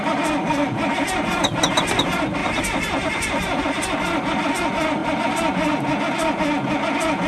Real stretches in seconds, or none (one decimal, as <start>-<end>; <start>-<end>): 0.0-2.4; 3.8-7.3